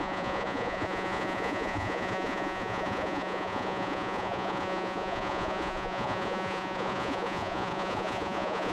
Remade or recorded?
remade